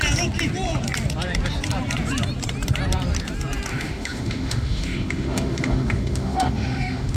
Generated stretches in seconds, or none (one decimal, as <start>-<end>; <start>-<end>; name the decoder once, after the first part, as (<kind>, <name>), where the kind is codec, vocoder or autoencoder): 3.7-7.2 (autoencoder, DAC-VAE)